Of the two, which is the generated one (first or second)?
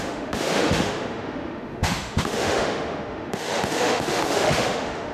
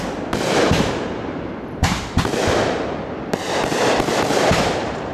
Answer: first